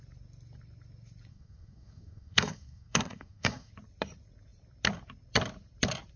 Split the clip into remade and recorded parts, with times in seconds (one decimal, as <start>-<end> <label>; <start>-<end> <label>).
0.0-1.3 recorded; 1.3-3.7 remade; 3.7-6.2 recorded